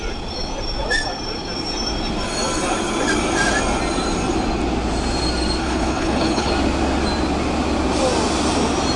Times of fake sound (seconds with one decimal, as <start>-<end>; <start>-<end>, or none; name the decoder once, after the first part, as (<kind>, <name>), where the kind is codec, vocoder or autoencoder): 5.6-6.5 (codec, HILCodec)

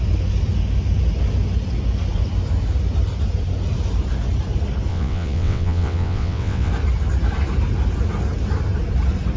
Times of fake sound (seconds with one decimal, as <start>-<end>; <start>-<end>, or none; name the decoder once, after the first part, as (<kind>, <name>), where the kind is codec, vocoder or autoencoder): 4.9-6.7 (vocoder, WaveNeXt)

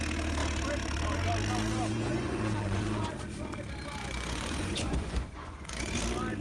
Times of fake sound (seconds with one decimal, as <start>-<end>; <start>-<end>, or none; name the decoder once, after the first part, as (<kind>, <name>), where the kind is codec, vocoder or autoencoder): 1.9-3.0 (vocoder, Vocos); 4.0-6.0

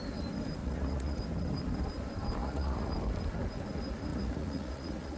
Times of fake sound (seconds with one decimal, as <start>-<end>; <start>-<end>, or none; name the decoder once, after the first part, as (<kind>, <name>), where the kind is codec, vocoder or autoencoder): 0.6-1.2 (vocoder, Vocos); 2.4-2.9; 4.1-5.2

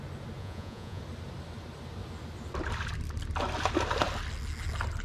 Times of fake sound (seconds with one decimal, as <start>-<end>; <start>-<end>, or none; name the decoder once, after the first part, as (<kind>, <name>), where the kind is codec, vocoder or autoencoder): 0.4-1.0 (vocoder, Vocos)